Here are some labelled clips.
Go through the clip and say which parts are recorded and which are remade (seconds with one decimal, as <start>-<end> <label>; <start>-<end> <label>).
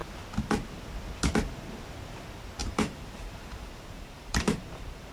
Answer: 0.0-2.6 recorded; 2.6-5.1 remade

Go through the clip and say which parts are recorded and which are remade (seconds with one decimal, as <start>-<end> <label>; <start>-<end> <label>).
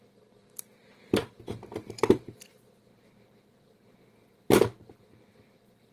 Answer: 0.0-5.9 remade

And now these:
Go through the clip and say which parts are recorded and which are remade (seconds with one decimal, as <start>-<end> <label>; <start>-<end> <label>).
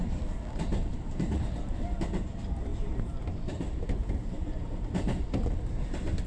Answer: 0.0-0.7 recorded; 0.7-1.7 remade; 1.7-2.7 recorded; 2.7-5.4 remade; 5.4-6.3 recorded